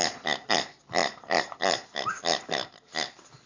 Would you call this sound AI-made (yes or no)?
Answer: yes